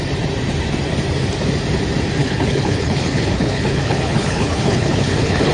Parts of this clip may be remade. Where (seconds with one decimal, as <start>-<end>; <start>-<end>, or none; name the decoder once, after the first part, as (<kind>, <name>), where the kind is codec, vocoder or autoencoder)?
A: 2.2-5.5 (codec, HILCodec)